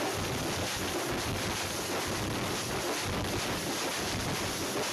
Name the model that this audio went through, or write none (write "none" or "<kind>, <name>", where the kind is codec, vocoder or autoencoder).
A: none